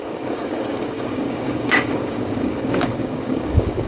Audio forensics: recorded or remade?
remade